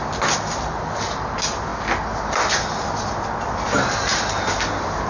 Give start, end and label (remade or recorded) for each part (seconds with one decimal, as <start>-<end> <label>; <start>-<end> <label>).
0.0-5.1 recorded